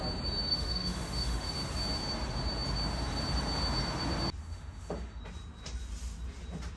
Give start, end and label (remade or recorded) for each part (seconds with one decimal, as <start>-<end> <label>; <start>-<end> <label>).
0.0-0.5 recorded; 0.5-1.5 remade; 1.5-4.4 recorded; 4.4-5.2 remade; 5.2-6.8 recorded